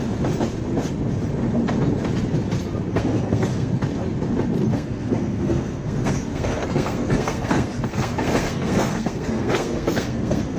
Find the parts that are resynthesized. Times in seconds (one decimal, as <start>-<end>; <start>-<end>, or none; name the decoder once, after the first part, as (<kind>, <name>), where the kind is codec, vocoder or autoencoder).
2.9-3.7 (codec, SNAC); 4.7-10.6